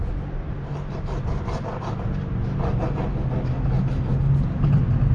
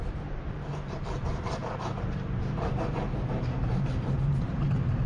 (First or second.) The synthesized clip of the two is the second